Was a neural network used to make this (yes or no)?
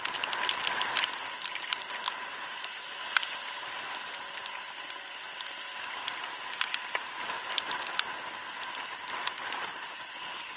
no